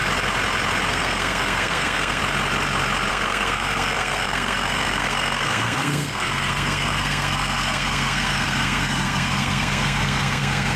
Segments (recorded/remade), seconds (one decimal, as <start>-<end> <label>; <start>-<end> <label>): 0.0-0.9 recorded; 0.9-2.2 remade; 2.2-3.1 recorded; 3.1-10.8 remade